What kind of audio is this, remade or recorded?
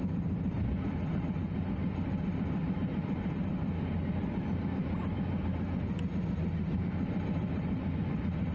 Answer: recorded